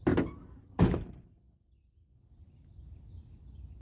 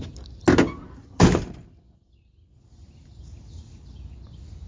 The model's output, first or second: first